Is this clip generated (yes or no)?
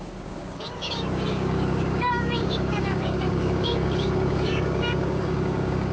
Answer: yes